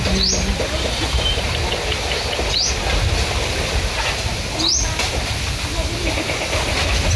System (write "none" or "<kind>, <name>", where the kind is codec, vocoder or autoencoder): none